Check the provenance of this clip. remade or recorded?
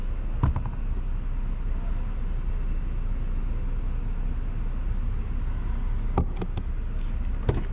recorded